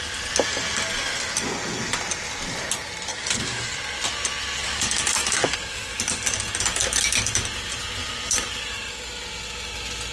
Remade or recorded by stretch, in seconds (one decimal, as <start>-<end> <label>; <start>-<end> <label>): 0.0-3.1 recorded; 3.1-3.7 remade; 3.7-4.6 recorded; 4.6-6.0 remade; 6.0-10.1 recorded